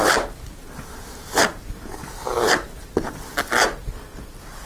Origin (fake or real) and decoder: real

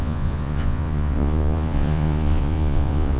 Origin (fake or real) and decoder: fake, vocoder, Vocos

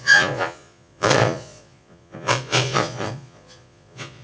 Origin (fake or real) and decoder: fake, vocoder, Vocos